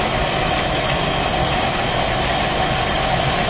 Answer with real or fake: real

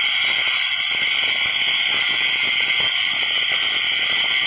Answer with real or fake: fake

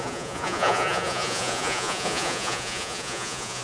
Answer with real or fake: fake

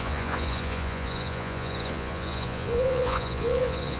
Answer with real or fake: fake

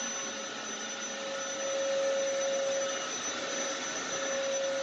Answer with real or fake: real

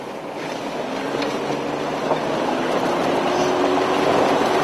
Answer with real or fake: real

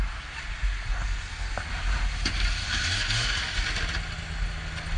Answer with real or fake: real